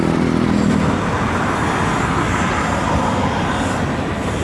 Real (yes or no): yes